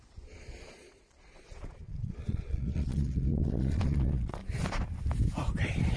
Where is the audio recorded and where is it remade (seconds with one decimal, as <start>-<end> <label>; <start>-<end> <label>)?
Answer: 0.0-4.4 remade; 4.4-6.0 recorded